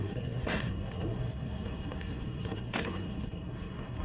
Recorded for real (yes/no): no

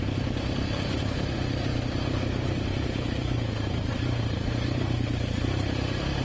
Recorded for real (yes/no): no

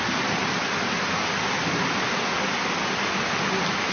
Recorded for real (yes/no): yes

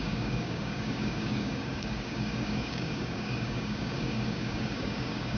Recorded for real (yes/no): no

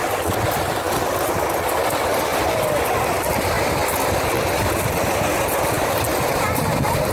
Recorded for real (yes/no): yes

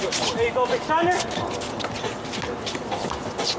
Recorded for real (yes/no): yes